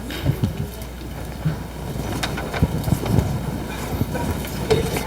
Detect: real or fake real